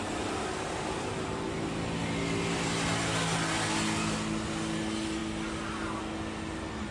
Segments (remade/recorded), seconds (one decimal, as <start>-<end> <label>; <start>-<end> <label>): 0.0-6.9 recorded